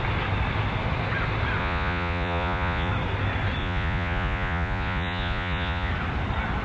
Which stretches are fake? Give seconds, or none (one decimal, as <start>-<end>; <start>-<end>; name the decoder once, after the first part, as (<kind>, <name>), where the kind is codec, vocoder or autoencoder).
1.6-2.9 (vocoder, Vocos); 3.6-5.9